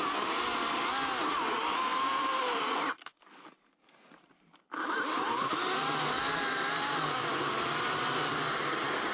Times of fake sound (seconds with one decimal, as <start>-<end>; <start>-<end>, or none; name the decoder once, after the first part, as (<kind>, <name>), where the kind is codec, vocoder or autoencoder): none